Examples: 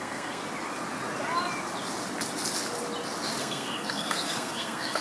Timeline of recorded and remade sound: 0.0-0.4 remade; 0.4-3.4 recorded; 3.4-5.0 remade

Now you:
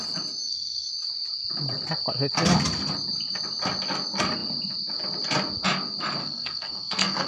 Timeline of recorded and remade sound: 0.0-0.4 recorded; 0.4-0.9 remade; 0.9-6.2 recorded; 6.2-7.3 remade

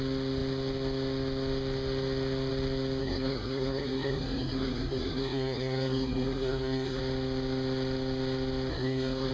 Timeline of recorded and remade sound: 0.0-3.0 recorded; 3.0-7.0 remade; 7.0-8.7 recorded; 8.7-9.3 remade

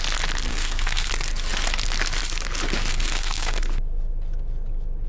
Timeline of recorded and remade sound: 0.0-0.5 recorded; 0.5-1.1 remade; 1.1-2.9 recorded; 2.9-3.6 remade; 3.6-5.1 recorded

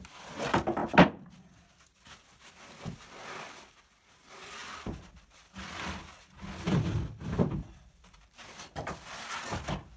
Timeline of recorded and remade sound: 0.0-10.0 recorded

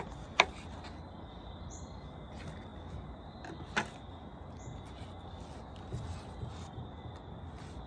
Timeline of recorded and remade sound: 0.0-7.9 recorded

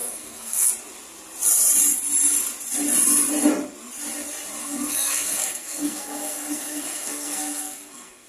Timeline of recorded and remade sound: 0.0-0.7 remade; 0.7-4.6 recorded; 4.6-8.3 remade